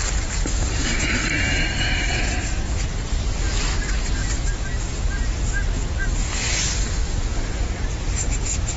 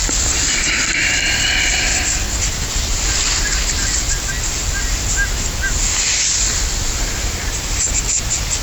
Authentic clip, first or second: first